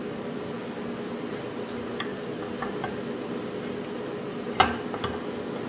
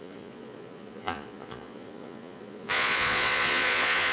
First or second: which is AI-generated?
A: second